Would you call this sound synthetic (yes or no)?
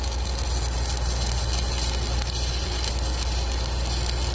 no